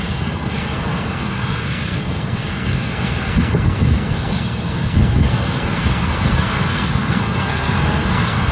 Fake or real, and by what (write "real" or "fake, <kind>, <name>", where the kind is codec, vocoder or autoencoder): fake, codec, SNAC